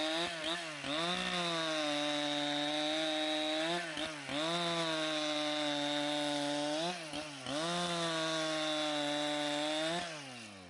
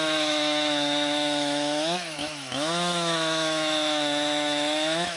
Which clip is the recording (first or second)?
first